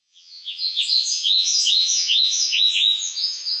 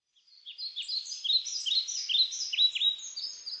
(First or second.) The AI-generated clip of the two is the first